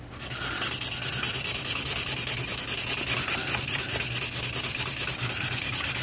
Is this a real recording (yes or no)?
yes